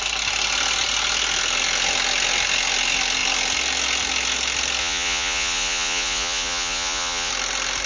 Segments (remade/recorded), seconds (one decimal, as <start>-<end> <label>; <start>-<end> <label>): 0.0-4.8 recorded; 4.8-7.3 remade; 7.3-7.9 recorded